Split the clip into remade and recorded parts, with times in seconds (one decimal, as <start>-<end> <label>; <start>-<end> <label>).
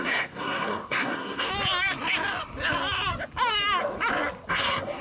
0.0-1.5 remade; 1.5-4.5 recorded; 4.5-5.0 remade